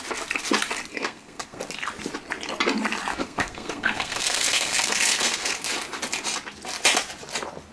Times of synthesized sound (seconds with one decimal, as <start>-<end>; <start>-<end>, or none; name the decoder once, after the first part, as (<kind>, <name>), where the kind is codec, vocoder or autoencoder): 0.9-1.6 (codec, SNAC); 3.1-5.7